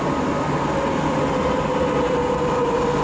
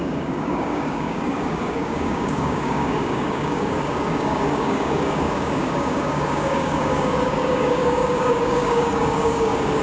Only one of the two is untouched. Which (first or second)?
first